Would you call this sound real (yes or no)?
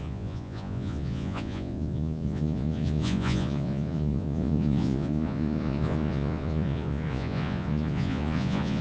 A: no